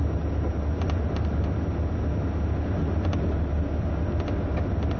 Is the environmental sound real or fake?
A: real